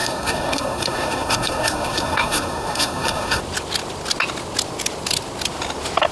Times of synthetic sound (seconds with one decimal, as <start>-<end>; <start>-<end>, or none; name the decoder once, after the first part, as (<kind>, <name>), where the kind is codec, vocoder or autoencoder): 0.0-3.4 (codec, SNAC)